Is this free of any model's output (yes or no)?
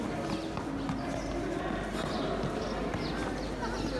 yes